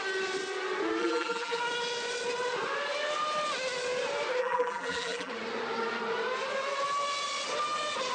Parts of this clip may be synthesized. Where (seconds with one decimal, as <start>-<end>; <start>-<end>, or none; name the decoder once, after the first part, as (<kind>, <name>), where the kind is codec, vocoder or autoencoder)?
1.0-1.6 (vocoder, BigVGAN v2); 4.4-5.3